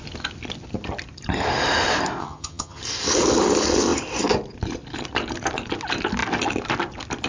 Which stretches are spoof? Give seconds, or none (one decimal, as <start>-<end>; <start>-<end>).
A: 2.2-2.8